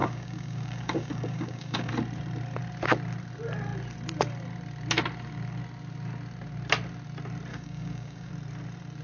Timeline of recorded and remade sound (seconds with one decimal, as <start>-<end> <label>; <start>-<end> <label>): 0.0-1.9 remade; 1.9-7.5 recorded; 7.5-8.3 remade; 8.3-9.0 recorded